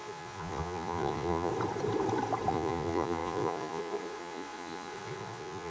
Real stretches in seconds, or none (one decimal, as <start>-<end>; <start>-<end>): 1.5-2.5